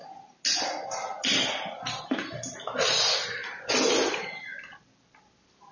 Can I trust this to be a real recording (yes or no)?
yes